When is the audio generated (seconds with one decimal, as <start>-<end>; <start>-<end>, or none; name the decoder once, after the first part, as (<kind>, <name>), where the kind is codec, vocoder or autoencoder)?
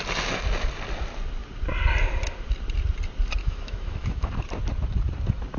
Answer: 3.4-4.3 (autoencoder, DAC-VAE)